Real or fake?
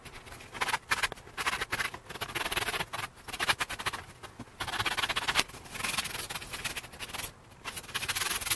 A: real